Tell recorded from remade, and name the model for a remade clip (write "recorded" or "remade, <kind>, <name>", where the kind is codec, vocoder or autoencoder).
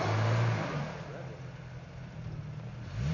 recorded